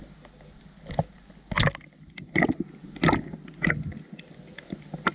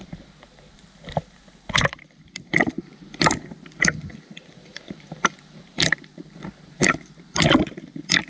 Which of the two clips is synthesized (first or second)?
second